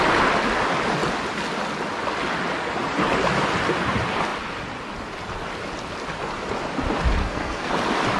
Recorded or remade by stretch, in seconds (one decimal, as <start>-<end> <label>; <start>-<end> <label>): 0.0-7.2 recorded; 7.2-7.7 remade; 7.7-8.2 recorded